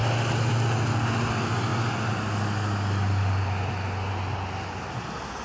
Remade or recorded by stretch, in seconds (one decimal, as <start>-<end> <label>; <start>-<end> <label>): 0.0-5.4 recorded